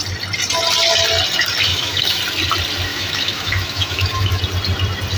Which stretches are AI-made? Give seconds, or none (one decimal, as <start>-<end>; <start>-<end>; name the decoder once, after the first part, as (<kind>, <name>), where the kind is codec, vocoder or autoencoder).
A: 1.7-2.2 (autoencoder, DAC-VAE); 2.9-4.4